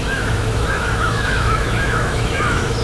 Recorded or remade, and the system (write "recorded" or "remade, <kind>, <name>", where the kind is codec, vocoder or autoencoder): remade, autoencoder, DAC-VAE